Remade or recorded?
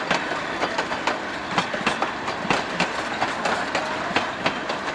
recorded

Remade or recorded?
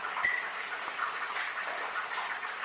recorded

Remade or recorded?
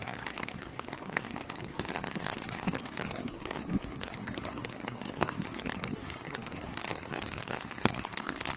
remade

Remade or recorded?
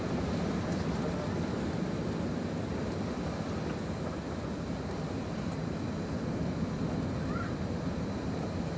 recorded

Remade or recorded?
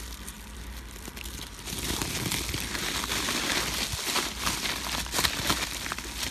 recorded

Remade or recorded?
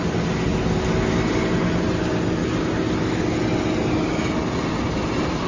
recorded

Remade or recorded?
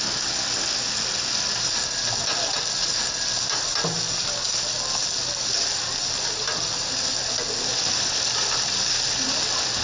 recorded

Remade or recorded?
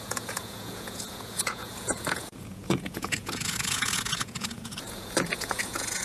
remade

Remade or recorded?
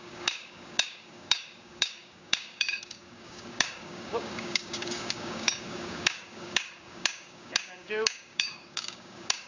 remade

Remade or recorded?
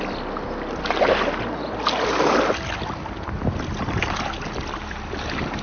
recorded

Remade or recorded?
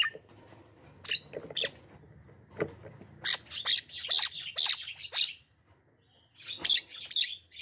recorded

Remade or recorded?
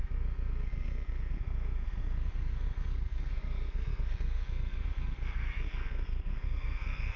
remade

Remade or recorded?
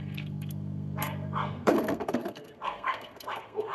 remade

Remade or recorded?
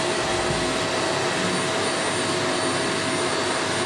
recorded